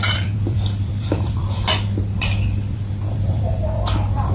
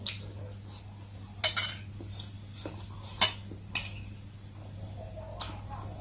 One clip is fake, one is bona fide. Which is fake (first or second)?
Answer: first